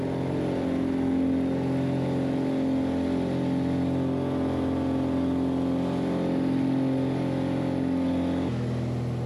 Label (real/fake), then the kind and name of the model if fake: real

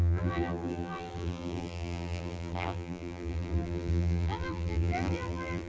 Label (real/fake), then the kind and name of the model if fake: fake, vocoder, BigVGAN v2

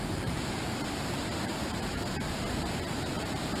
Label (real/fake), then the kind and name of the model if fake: fake, vocoder, BigVGAN v2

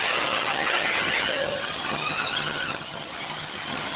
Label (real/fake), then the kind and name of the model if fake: fake, vocoder, HiFi-GAN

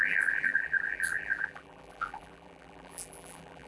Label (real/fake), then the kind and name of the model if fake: fake, vocoder, BigVGAN v2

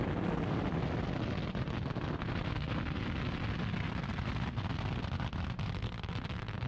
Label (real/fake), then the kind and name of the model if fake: real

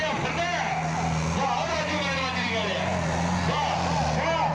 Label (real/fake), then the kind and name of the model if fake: real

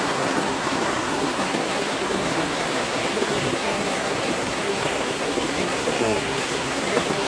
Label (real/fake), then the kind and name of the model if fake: fake, codec, SNAC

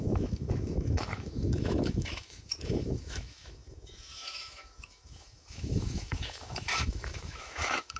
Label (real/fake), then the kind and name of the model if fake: fake, autoencoder, DAC-VAE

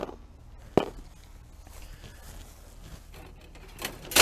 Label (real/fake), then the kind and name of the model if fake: real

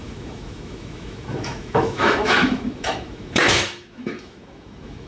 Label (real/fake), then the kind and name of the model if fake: fake, autoencoder, DAC-VAE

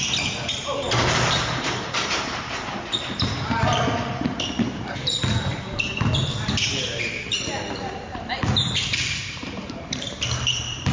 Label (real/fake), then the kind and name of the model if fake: fake, vocoder, BigVGAN v2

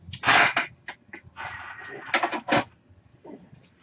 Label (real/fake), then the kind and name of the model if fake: real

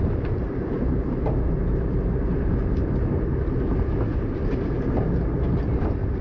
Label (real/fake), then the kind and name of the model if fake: fake, vocoder, BigVGAN v2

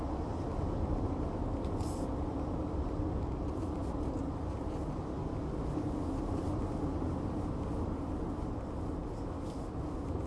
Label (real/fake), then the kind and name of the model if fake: real